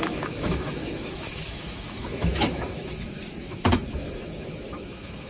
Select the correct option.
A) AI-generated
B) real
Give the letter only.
A